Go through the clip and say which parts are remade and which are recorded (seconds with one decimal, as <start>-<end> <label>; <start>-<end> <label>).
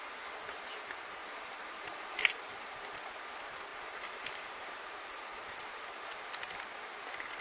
0.0-1.2 recorded; 1.2-2.2 remade; 2.2-3.7 recorded; 3.7-4.8 remade; 4.8-7.4 recorded